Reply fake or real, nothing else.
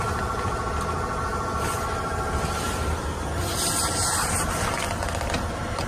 real